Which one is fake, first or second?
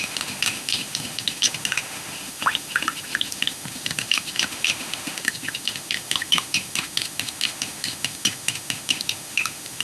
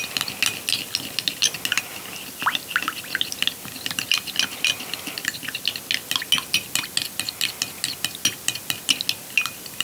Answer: first